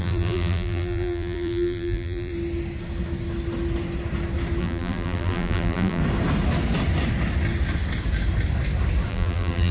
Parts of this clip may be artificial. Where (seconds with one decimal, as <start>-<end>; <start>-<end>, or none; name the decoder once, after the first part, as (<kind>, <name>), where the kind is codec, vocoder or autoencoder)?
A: 0.0-2.3 (vocoder, BigVGAN v2); 4.6-6.0; 9.1-9.7